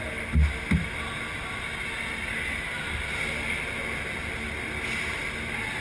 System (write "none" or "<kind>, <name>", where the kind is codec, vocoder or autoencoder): none